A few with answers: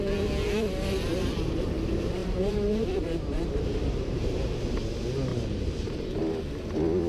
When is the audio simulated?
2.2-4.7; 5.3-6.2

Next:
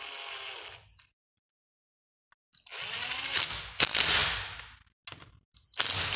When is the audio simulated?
none

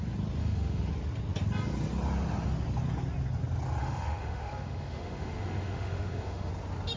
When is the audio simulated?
0.4-0.9; 3.8-6.5

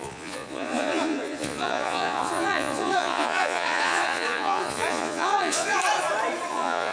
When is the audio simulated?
0.0-5.8; 6.5-6.9